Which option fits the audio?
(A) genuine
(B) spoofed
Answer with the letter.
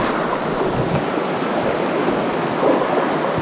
A